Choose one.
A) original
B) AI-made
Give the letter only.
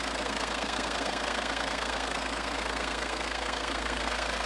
B